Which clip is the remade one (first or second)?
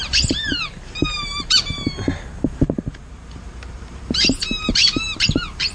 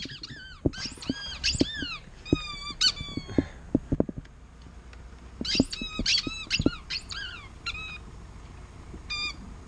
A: first